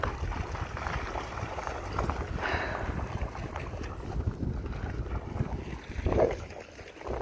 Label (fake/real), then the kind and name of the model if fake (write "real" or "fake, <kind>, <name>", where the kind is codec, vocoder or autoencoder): real